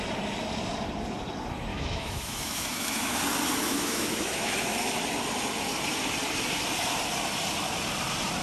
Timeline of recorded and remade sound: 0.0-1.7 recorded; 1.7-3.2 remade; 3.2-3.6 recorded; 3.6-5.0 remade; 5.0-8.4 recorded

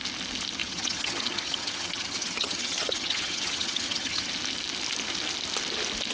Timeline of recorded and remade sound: 0.0-0.6 recorded; 0.6-4.3 remade; 4.3-6.1 recorded

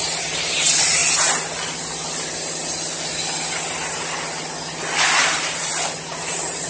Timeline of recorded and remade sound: 0.0-1.0 remade; 1.0-5.0 recorded; 5.0-5.7 remade; 5.7-6.3 recorded; 6.3-6.7 remade